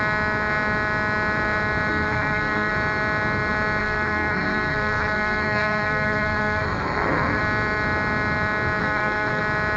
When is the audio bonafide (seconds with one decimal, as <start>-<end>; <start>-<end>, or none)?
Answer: 0.0-1.9; 2.7-3.8; 7.4-8.8; 9.4-9.8